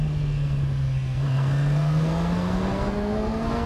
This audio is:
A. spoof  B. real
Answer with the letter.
A